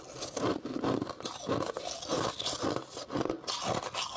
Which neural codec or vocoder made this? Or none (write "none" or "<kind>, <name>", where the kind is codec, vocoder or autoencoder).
none